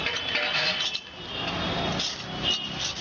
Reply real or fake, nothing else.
real